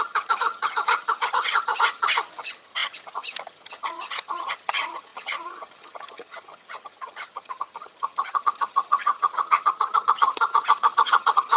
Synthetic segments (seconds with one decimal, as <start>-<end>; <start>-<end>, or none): 0.0-11.6